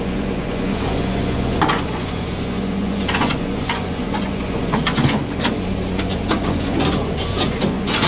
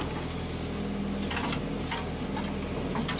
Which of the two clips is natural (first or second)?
second